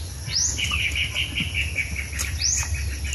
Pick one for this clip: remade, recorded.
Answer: recorded